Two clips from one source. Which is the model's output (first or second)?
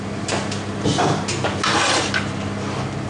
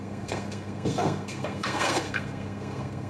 second